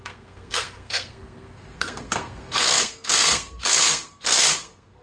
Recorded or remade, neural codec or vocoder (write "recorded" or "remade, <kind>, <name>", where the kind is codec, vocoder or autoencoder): remade, codec, SNAC